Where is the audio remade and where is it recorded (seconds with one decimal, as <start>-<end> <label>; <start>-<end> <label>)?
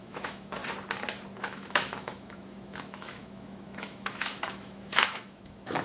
0.0-0.6 remade; 0.6-1.4 recorded; 1.4-5.8 remade